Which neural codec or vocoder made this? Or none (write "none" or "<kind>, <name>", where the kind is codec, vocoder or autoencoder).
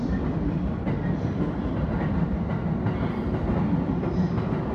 none